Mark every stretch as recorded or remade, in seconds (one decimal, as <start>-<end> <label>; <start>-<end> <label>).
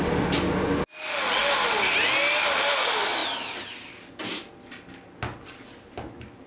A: 0.0-6.5 recorded